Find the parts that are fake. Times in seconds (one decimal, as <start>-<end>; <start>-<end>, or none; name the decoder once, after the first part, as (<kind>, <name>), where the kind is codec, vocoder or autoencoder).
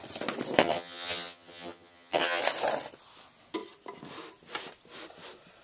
0.6-2.4 (vocoder, HiFi-GAN)